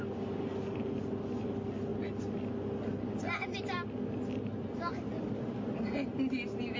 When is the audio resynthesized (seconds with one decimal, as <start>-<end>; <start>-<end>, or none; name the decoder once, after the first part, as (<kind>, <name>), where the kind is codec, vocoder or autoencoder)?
none